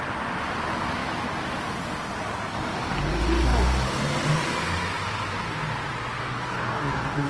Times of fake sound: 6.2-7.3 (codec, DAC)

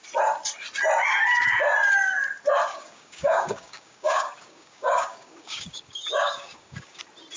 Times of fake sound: 2.7-7.0 (codec, DAC)

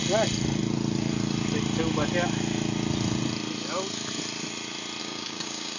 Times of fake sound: 5.0-5.8 (codec, DAC)